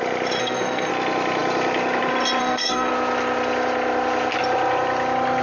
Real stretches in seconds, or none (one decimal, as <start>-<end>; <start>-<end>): 0.0-0.4; 0.9-2.4; 2.9-5.4